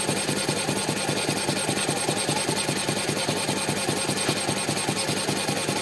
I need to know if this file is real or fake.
real